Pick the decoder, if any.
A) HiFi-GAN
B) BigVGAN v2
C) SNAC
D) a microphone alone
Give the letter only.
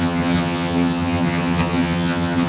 A